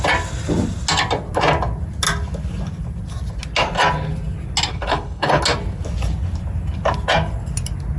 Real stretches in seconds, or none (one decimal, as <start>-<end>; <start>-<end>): 0.0-4.7; 5.4-8.0